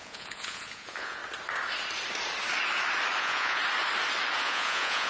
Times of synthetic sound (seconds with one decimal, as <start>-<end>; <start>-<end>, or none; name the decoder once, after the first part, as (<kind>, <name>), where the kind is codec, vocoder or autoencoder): 0.0-1.2 (vocoder, Vocos); 3.2-3.6; 4.4-5.1